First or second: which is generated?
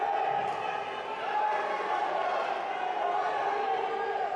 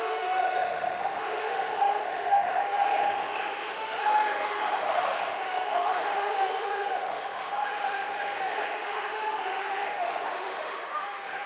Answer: second